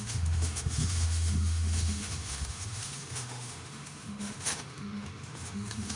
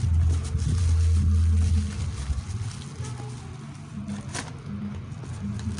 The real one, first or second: second